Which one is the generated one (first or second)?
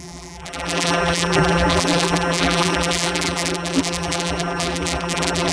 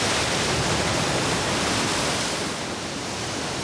first